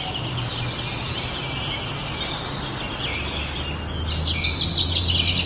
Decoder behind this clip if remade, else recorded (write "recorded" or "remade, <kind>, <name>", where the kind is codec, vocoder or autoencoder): recorded